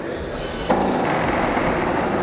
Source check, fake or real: real